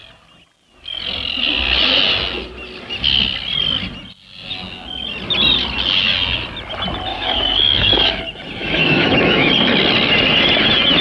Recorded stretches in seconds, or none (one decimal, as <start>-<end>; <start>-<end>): 0.0-7.1; 8.2-8.6; 9.5-11.0